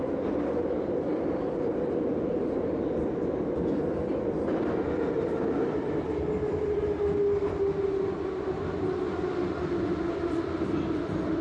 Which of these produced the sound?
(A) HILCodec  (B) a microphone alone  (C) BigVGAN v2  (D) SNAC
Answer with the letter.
B